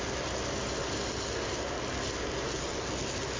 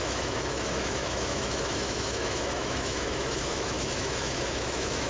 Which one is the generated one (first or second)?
second